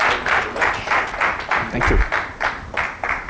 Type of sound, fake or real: real